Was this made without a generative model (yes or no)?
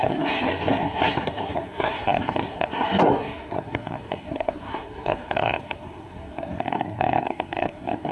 no